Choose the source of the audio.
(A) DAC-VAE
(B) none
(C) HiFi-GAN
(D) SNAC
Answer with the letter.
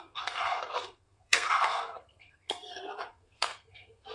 D